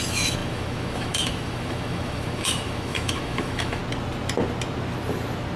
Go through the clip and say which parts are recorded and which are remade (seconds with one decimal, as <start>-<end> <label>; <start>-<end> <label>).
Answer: 0.0-3.8 remade; 3.8-5.6 recorded